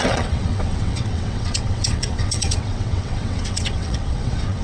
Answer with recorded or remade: remade